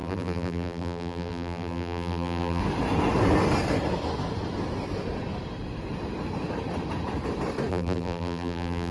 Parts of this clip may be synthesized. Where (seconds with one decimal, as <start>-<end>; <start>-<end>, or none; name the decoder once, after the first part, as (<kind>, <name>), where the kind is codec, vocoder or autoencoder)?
0.0-2.6 (vocoder, BigVGAN v2); 7.7-8.9